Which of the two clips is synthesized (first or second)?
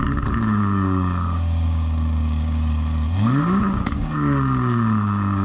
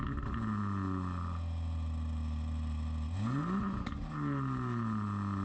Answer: first